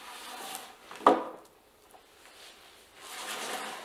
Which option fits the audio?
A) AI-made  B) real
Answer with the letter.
B